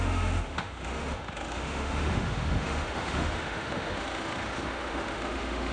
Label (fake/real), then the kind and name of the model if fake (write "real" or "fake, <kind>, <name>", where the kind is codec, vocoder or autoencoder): fake, autoencoder, DAC-VAE